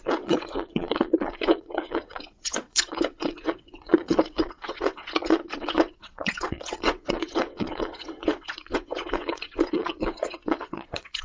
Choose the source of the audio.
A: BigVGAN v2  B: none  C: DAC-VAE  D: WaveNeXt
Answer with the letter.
D